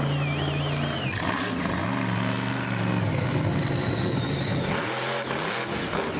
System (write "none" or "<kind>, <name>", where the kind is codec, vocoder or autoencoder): none